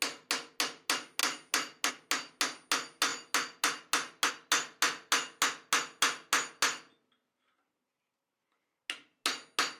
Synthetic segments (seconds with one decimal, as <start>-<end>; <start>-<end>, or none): none